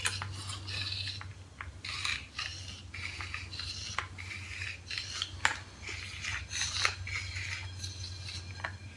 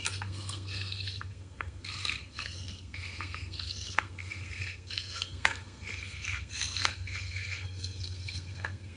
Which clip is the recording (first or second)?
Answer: first